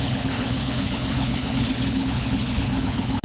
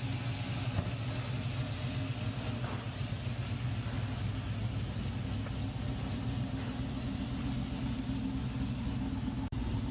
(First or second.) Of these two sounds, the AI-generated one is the first